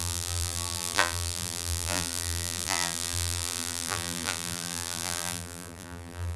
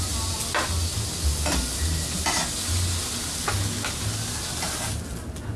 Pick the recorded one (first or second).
second